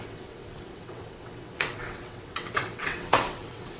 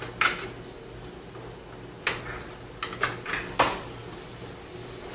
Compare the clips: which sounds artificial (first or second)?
first